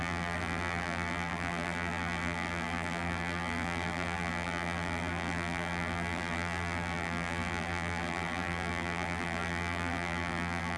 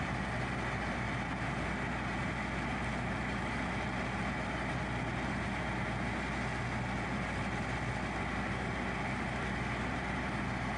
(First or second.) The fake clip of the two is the first